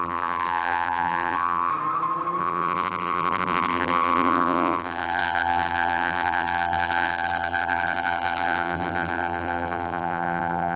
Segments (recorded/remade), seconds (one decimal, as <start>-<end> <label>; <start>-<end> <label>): 0.0-1.7 remade; 1.7-2.4 recorded; 2.4-10.8 remade